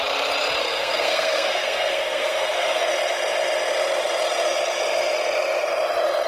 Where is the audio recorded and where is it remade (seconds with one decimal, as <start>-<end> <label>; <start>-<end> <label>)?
0.0-0.6 recorded; 0.6-2.8 remade; 2.8-6.3 recorded